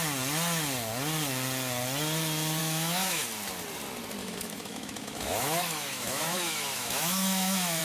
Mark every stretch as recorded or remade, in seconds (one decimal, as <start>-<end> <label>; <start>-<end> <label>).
0.0-2.6 recorded; 2.6-3.2 remade; 3.2-4.2 recorded; 4.2-7.8 remade